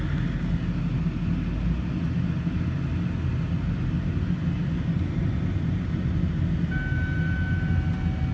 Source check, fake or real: real